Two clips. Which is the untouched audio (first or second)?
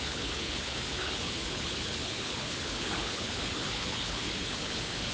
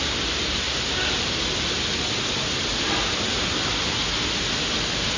second